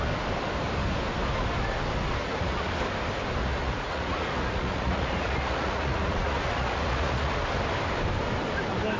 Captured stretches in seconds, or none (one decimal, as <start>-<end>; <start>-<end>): 0.0-2.2; 2.7-3.4; 7.4-9.0